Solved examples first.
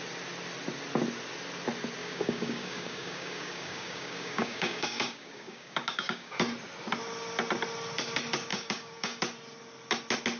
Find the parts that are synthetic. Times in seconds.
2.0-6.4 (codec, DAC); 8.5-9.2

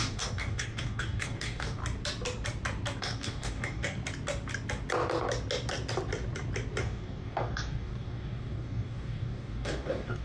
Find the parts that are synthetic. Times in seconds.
0.0-1.8 (codec, DAC); 3.0-3.9; 6.8-10.2